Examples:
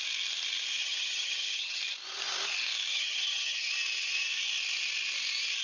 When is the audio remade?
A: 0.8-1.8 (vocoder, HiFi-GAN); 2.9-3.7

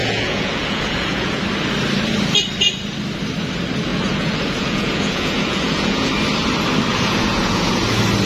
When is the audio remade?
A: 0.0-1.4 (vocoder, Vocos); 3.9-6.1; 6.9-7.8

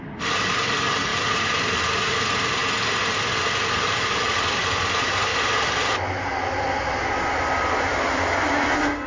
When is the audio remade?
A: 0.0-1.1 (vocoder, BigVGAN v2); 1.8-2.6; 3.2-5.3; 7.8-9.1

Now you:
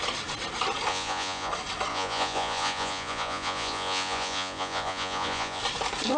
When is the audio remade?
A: 0.9-1.5 (vocoder, Vocos); 1.9-5.6

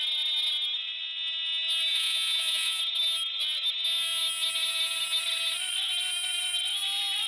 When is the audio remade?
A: 1.9-2.8 (vocoder, Vocos)

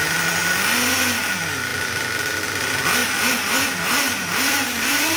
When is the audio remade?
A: 3.0-5.2 (vocoder, BigVGAN v2)